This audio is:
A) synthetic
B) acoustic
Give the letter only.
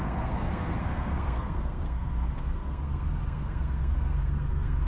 A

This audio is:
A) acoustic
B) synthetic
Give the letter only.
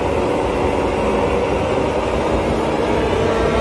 A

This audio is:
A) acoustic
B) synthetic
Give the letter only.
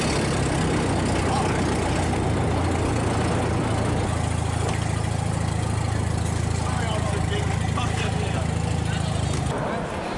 A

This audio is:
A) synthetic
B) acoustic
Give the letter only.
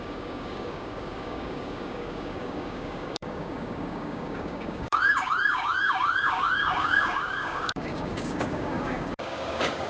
A